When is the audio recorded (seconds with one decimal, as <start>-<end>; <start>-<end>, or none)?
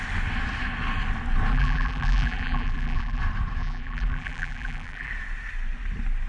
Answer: 0.0-1.5; 3.2-3.6; 5.1-6.3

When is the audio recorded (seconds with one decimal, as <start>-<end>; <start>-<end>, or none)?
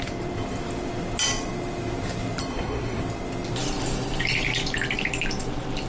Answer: 0.0-2.5; 3.0-5.9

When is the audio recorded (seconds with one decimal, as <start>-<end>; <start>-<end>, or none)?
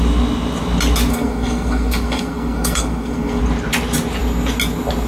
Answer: 0.0-1.1; 3.4-5.1